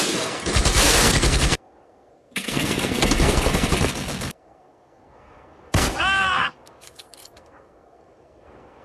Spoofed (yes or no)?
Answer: yes